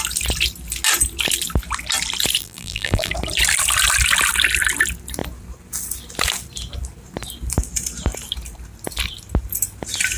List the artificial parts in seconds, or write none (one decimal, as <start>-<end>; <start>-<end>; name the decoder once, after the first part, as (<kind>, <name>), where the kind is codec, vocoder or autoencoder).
2.4-3.1 (vocoder, BigVGAN v2)